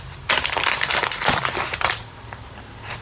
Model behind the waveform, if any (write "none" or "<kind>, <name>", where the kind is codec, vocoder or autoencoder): none